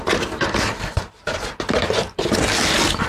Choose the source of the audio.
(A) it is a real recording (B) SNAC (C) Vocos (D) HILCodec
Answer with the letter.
A